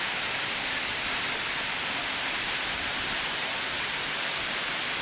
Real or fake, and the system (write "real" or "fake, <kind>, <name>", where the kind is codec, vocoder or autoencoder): real